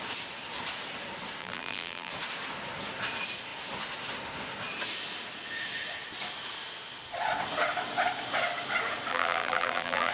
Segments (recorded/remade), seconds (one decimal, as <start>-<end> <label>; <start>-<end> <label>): 0.0-1.4 recorded; 1.4-2.1 remade; 2.1-9.1 recorded; 9.1-10.1 remade